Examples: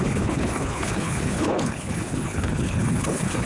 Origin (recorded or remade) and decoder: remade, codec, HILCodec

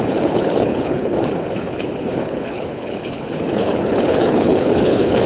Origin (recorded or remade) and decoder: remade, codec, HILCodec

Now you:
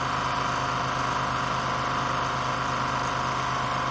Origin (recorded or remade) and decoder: recorded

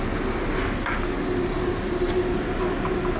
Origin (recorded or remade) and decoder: recorded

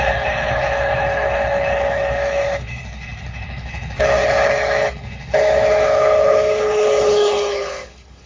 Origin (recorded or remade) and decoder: remade, codec, HILCodec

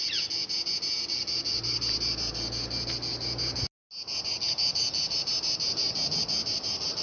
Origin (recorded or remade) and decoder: recorded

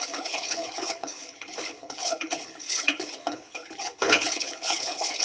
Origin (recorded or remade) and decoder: remade, codec, HILCodec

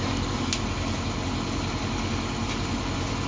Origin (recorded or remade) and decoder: recorded